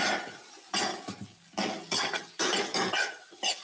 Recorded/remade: recorded